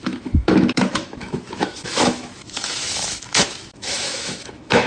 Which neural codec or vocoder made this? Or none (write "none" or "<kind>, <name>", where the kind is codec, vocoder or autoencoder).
autoencoder, DAC-VAE